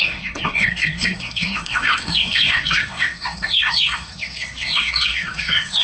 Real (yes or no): no